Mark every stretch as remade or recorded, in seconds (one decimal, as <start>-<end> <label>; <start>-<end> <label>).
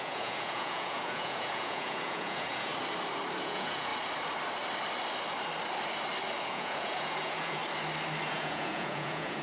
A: 0.0-2.7 remade; 2.7-3.4 recorded; 3.4-3.9 remade; 3.9-6.4 recorded; 6.4-7.6 remade; 7.6-8.3 recorded; 8.3-9.4 remade